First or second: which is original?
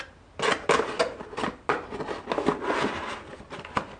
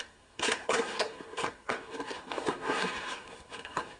first